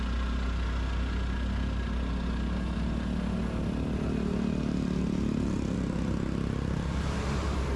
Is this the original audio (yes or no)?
yes